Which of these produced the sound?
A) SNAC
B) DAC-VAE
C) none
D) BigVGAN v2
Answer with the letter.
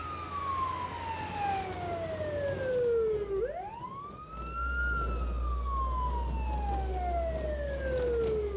C